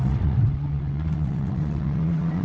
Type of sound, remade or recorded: remade